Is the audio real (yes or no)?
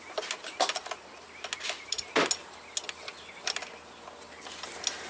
yes